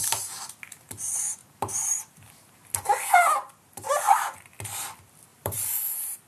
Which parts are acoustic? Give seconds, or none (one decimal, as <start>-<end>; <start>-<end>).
0.0-1.4; 2.0-5.3; 5.8-6.3